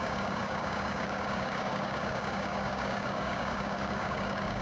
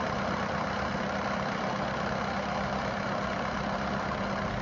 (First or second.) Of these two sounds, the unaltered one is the second